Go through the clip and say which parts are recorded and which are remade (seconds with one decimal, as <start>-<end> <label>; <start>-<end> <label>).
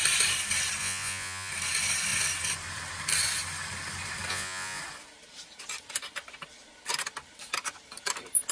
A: 0.0-0.8 recorded; 0.8-1.5 remade; 1.5-4.3 recorded; 4.3-4.8 remade; 4.8-8.5 recorded